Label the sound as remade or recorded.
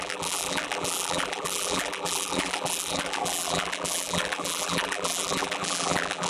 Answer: remade